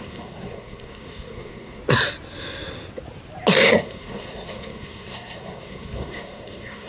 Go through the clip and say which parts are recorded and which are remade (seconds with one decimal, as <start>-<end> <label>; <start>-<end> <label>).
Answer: 0.0-1.8 remade; 1.8-3.6 recorded; 3.6-6.9 remade